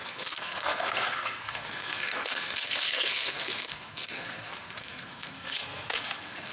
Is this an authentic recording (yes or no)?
no